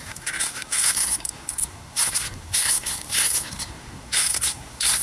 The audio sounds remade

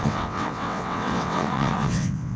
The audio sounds remade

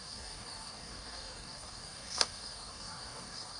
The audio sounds remade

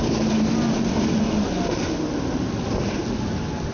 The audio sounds recorded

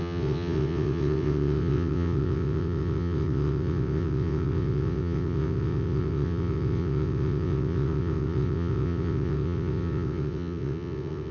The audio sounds remade